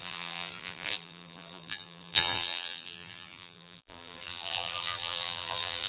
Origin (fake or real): fake